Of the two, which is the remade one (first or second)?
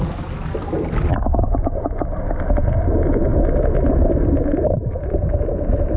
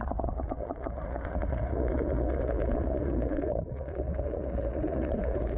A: second